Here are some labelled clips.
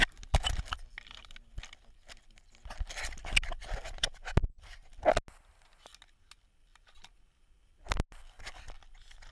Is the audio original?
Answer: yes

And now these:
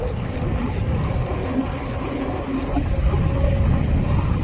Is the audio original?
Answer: yes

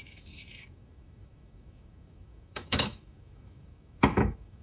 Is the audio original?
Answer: no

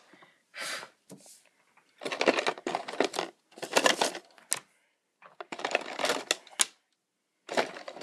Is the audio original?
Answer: yes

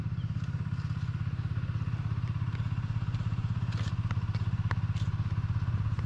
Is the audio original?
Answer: no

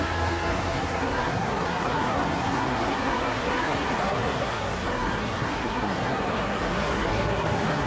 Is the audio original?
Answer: no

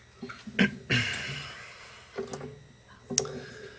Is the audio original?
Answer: yes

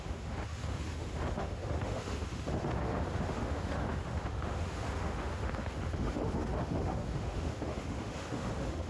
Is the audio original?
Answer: no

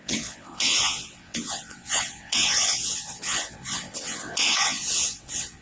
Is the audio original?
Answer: no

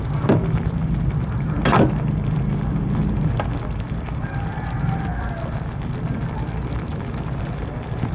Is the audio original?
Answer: yes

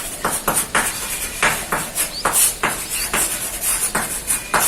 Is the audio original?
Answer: yes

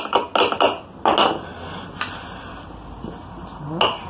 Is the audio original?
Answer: yes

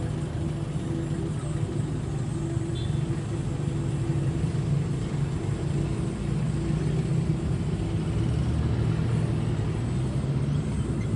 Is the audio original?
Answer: yes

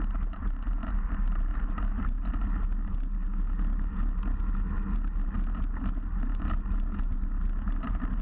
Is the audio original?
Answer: yes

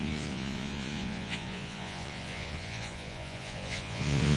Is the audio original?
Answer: no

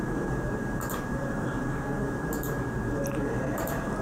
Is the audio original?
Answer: no